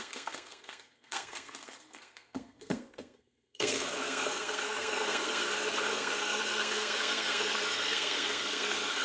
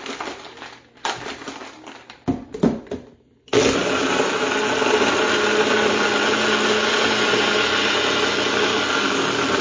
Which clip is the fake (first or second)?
first